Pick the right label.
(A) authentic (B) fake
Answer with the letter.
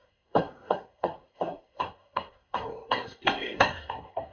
B